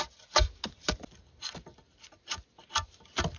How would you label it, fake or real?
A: real